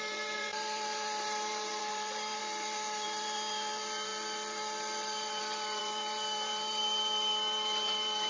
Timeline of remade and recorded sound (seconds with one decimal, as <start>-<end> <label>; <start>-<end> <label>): 0.0-8.3 remade